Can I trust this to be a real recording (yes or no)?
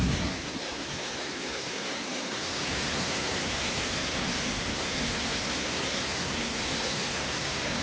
no